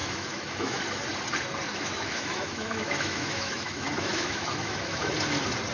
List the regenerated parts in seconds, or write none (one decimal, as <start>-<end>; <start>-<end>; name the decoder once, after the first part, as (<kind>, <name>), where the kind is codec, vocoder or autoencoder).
0.0-0.8 (autoencoder, DAC-VAE); 1.7-5.1